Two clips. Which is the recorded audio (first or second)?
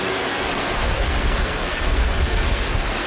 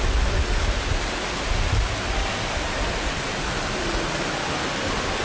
second